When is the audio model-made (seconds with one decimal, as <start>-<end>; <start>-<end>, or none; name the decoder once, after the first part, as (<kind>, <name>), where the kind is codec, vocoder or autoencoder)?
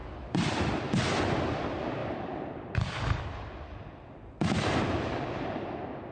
0.0-0.8 (vocoder, BigVGAN v2); 2.0-3.2